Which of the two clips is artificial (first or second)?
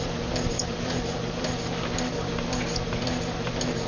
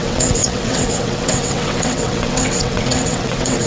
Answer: second